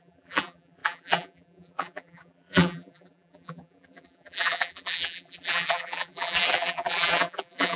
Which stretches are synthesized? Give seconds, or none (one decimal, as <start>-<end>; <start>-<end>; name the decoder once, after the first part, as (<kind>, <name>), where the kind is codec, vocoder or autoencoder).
0.0-7.8 (vocoder, BigVGAN v2)